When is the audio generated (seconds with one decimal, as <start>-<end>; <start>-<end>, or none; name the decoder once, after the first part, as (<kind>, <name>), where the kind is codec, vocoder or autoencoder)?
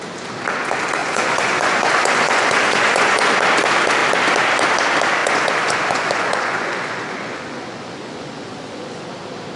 1.0-3.3 (vocoder, Vocos); 5.2-9.1